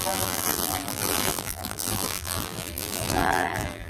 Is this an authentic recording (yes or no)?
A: no